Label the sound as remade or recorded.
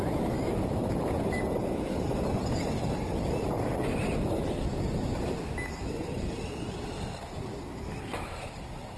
recorded